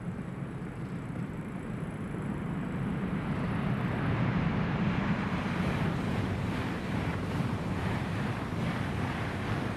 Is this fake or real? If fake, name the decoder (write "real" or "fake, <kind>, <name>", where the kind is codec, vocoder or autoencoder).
fake, vocoder, BigVGAN v2